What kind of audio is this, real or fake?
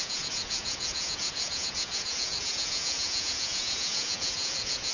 fake